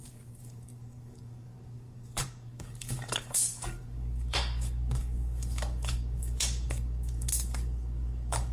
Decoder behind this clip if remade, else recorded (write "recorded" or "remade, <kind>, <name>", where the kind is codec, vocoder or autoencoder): remade, codec, DAC